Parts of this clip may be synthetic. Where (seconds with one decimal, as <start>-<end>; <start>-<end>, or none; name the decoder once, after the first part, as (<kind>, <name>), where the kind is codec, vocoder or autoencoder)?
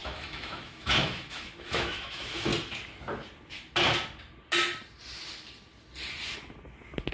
0.0-2.5 (autoencoder, DAC-VAE)